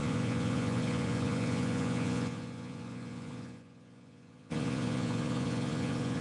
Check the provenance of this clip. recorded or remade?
remade